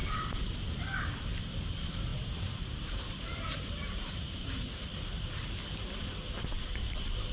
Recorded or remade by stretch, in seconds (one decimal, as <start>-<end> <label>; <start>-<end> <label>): 0.0-4.9 remade; 4.9-6.6 recorded; 6.6-7.3 remade